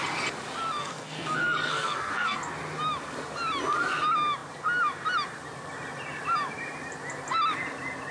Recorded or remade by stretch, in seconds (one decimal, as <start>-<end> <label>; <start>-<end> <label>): 0.0-0.8 recorded; 0.8-2.4 remade; 2.4-8.1 recorded